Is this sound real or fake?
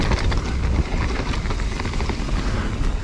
real